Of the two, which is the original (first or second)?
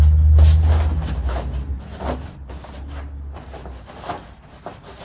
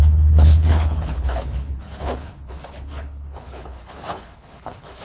first